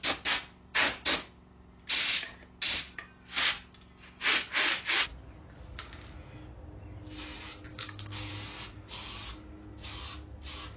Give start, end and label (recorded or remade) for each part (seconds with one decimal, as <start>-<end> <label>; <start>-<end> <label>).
0.0-7.7 recorded; 7.7-8.3 remade; 8.3-10.8 recorded

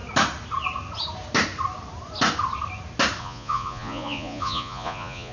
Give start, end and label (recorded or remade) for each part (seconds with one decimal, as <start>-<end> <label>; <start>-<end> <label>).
0.0-3.2 recorded; 3.2-5.3 remade

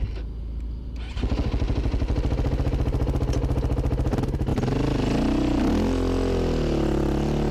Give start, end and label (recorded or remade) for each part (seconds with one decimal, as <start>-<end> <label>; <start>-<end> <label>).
0.0-7.5 recorded

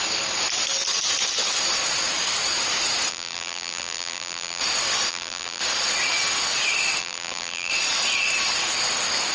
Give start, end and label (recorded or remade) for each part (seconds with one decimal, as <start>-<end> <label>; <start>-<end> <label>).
0.0-3.1 recorded; 3.1-4.6 remade; 4.6-5.1 recorded; 5.1-5.6 remade; 5.6-7.0 recorded; 7.0-7.7 remade; 7.7-9.3 recorded